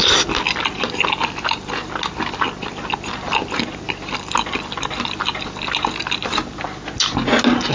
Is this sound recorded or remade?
recorded